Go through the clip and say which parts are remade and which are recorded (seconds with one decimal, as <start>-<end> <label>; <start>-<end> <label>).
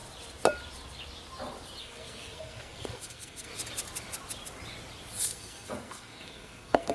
0.0-1.8 recorded; 1.8-3.5 remade; 3.5-5.2 recorded; 5.2-6.9 remade